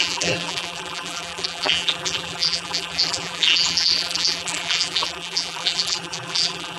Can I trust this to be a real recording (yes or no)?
no